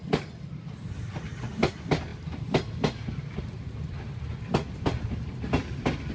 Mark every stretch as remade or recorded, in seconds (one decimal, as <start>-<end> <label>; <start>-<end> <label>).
0.0-6.1 recorded